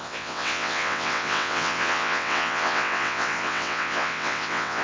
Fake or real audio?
fake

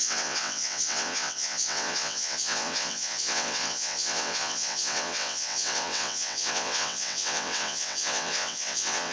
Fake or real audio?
fake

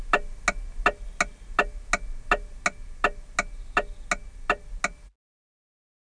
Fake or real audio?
real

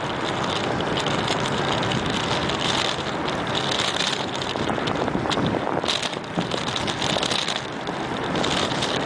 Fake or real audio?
real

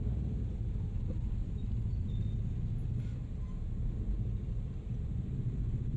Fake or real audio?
real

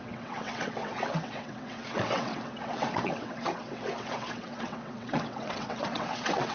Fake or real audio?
fake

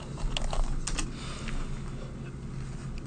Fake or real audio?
real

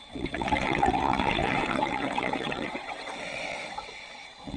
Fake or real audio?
fake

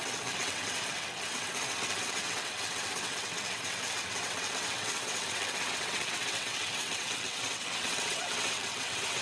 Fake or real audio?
fake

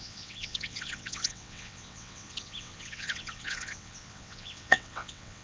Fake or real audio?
fake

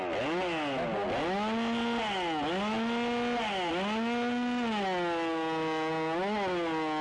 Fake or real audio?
real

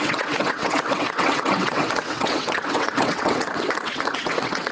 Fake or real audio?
fake